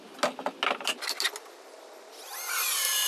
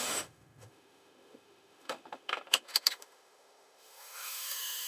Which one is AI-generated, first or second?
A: second